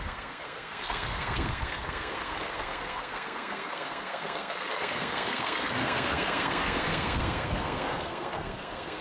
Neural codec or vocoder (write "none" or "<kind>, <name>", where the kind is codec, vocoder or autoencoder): codec, SNAC